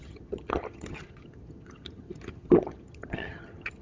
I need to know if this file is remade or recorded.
remade